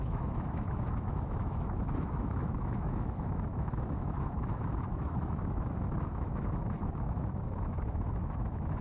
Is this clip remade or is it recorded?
remade